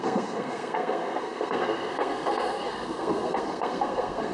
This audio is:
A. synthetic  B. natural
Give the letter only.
A